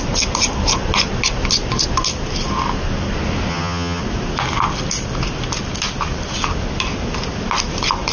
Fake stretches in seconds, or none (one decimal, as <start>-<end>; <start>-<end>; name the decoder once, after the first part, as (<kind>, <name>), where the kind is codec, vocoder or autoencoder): 3.5-4.0 (vocoder, HiFi-GAN)